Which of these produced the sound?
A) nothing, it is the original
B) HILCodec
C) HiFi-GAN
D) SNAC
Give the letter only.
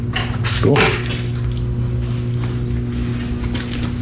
A